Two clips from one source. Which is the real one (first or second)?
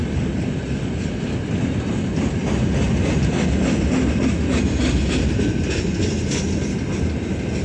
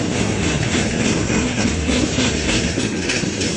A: first